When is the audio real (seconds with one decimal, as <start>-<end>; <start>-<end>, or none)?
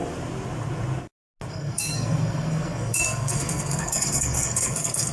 0.0-1.5